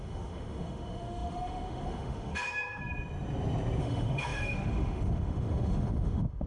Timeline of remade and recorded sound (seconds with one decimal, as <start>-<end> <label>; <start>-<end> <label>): 0.0-2.8 remade; 2.8-3.8 recorded; 3.8-6.5 remade